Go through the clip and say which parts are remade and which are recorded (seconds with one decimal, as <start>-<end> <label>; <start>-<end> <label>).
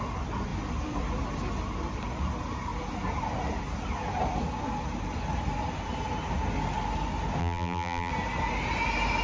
0.0-7.4 recorded; 7.4-8.1 remade; 8.1-9.2 recorded